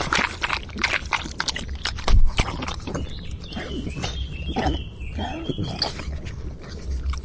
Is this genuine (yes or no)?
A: yes